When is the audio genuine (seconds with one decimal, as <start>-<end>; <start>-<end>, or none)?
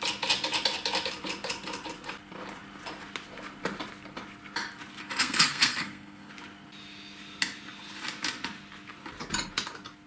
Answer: 0.0-5.2; 6.3-10.1